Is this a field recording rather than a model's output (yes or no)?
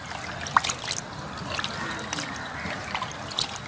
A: yes